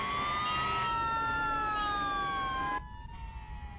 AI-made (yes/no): no